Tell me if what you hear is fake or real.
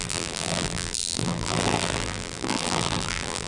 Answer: fake